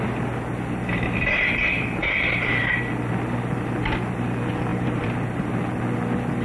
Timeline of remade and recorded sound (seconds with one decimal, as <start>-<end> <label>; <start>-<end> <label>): 0.0-2.0 recorded; 2.0-2.8 remade; 2.8-4.7 recorded; 4.7-5.5 remade; 5.5-6.4 recorded